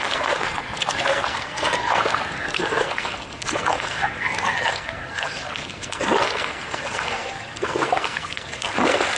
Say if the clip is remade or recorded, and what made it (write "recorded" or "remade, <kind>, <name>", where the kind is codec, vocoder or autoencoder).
remade, codec, SNAC